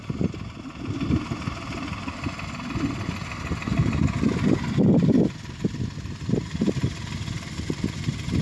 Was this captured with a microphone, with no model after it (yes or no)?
yes